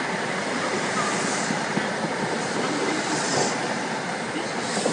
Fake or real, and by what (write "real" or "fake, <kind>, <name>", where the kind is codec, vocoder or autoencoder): fake, vocoder, BigVGAN v2